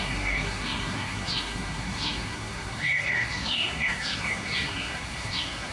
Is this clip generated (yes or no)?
yes